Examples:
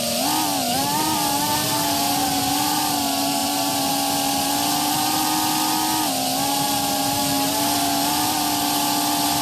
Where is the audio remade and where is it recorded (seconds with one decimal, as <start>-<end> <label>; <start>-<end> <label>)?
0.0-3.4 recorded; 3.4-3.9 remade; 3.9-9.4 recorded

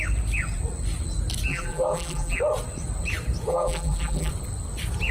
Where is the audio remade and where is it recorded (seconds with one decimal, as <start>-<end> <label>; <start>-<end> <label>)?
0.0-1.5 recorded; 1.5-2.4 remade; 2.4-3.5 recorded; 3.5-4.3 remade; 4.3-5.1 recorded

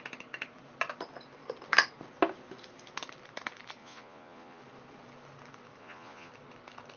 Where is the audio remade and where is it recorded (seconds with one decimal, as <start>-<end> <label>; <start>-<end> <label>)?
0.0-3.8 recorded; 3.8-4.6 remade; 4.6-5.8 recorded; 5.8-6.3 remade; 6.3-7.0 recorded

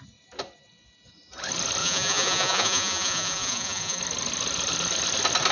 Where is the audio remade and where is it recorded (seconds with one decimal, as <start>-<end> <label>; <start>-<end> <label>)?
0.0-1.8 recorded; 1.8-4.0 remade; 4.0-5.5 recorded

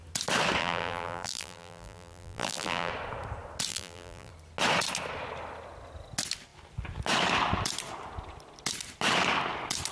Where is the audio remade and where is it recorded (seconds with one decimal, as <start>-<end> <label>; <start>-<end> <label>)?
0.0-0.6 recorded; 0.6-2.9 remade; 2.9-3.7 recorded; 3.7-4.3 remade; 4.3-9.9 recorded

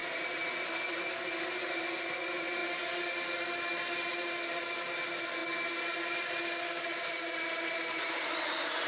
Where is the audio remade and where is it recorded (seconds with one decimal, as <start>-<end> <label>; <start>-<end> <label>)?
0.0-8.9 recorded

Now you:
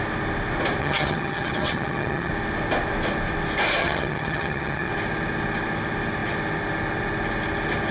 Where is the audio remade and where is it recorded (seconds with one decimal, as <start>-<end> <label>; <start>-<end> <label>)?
0.0-0.8 recorded; 0.8-2.3 remade; 2.3-3.8 recorded; 3.8-4.9 remade; 4.9-7.9 recorded